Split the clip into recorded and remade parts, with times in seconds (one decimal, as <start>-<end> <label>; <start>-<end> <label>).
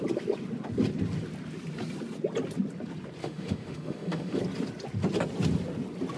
0.0-3.2 recorded; 3.2-4.4 remade; 4.4-6.2 recorded